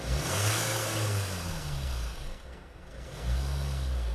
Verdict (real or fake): fake